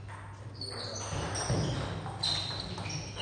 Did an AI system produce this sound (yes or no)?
no